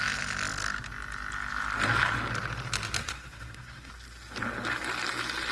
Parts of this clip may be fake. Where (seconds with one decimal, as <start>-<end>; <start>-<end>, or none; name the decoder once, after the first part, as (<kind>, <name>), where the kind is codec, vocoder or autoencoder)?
3.0-3.9 (codec, SNAC)